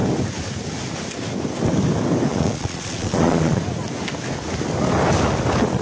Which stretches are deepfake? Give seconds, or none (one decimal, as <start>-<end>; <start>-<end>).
2.3-3.6